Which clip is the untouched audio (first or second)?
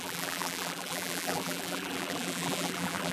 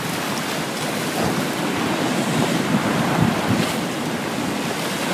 second